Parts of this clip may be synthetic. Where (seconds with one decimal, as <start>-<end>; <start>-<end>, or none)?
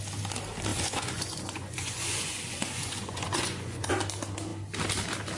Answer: 0.7-3.9